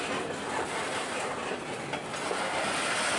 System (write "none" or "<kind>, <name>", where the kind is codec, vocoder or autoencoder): none